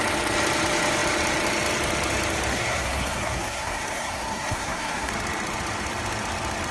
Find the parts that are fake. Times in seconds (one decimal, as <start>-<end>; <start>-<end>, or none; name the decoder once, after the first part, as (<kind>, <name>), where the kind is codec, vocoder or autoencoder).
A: 2.5-5.1 (codec, SNAC)